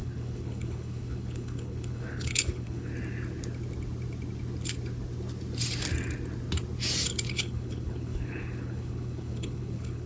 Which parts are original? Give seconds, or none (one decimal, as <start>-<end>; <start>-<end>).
2.9-7.3